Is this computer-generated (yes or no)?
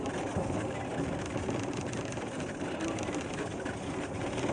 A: no